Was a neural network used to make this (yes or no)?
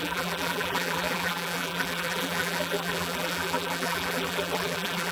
yes